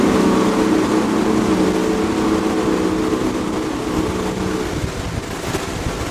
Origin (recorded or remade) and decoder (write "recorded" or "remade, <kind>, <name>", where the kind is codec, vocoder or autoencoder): recorded